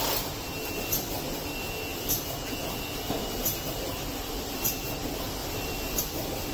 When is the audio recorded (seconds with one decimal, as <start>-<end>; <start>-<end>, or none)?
0.0-5.4; 6.0-6.5